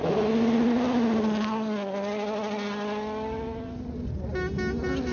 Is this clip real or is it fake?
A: real